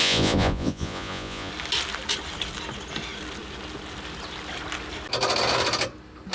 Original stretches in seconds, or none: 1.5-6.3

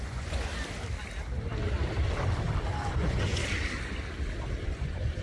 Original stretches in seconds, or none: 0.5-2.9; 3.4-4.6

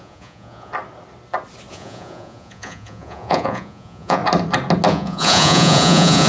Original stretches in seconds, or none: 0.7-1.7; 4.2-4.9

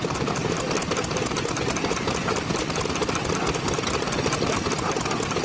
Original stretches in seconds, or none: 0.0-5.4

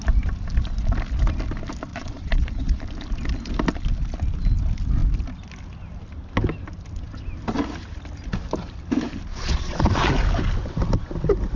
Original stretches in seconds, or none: 0.0-1.9; 2.8-9.3; 10.1-11.6

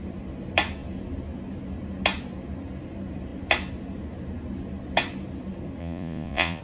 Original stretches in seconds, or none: 0.0-5.8